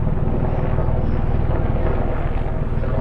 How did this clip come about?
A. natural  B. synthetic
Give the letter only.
A